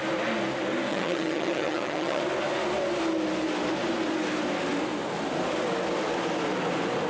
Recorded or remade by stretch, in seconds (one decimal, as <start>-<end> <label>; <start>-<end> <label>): 0.0-0.9 recorded; 0.9-2.2 remade; 2.2-7.1 recorded